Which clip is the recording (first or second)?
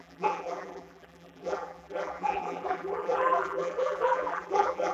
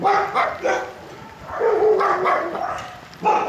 second